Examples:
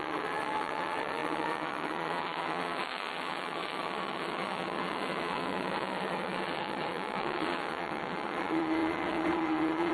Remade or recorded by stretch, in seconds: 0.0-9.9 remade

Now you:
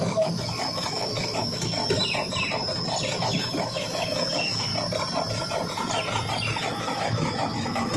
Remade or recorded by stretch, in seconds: 0.0-1.8 remade; 1.8-3.2 recorded; 3.2-4.7 remade; 4.7-6.6 recorded; 6.6-8.0 remade